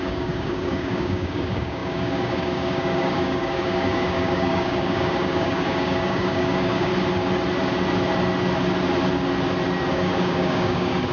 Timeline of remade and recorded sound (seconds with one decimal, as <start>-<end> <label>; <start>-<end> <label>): 0.0-6.9 remade; 6.9-9.9 recorded; 9.9-11.1 remade